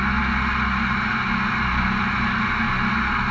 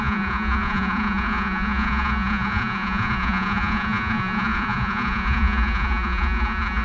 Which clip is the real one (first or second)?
first